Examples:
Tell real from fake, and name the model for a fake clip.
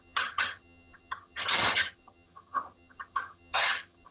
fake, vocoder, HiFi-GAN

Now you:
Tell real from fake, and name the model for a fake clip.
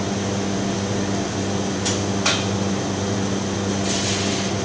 real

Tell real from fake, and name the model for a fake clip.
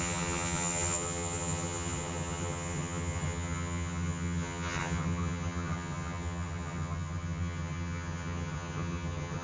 fake, vocoder, HiFi-GAN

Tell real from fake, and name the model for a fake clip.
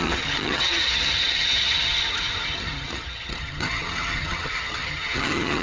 fake, vocoder, HiFi-GAN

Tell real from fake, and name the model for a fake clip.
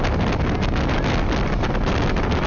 real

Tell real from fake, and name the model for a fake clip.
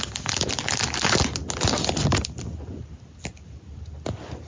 real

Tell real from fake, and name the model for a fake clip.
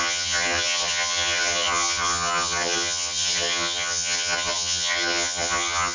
fake, vocoder, HiFi-GAN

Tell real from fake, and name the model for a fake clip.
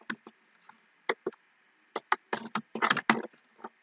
real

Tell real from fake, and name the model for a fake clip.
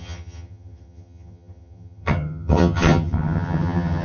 fake, vocoder, HiFi-GAN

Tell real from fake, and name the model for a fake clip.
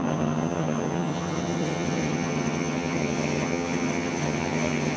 fake, vocoder, HiFi-GAN